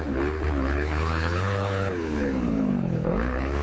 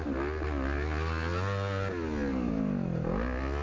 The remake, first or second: first